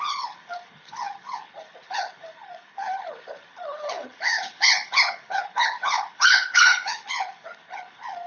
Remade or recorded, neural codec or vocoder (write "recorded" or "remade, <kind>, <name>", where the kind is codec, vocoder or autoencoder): remade, codec, HILCodec